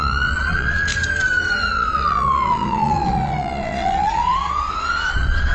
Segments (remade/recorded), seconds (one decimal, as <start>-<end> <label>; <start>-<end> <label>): 0.0-0.9 remade; 0.9-1.6 recorded; 1.6-5.5 remade